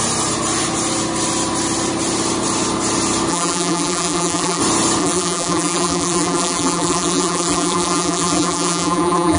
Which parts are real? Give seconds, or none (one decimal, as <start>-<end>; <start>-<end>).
0.0-3.3; 4.6-5.0